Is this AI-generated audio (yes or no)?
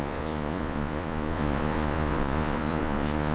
yes